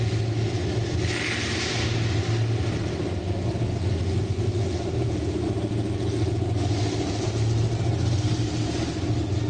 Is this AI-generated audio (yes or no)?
no